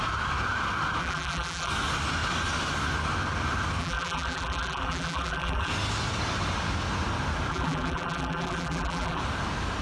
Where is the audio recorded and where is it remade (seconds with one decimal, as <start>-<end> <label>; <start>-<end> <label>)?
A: 0.0-1.0 recorded; 1.0-1.7 remade; 1.7-3.8 recorded; 3.8-5.7 remade; 5.7-7.5 recorded; 7.5-9.2 remade; 9.2-9.8 recorded